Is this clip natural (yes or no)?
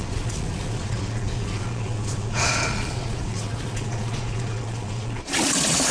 no